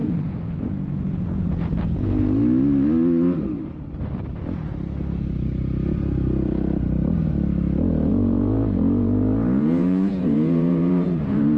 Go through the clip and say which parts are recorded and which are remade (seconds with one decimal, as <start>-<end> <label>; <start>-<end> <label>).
0.0-2.1 remade; 2.1-8.1 recorded; 8.1-11.6 remade